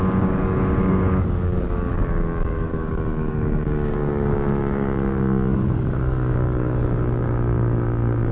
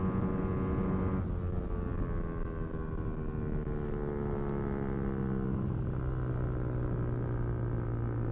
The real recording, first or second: second